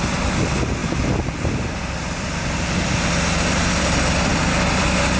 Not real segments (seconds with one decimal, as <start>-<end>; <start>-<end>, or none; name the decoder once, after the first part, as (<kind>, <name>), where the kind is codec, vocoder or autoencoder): none